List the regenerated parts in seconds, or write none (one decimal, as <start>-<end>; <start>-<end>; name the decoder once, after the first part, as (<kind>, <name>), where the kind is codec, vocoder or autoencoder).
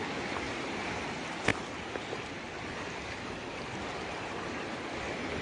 none